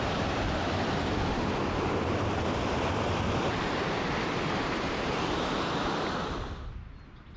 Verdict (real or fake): real